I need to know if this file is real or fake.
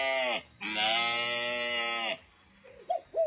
real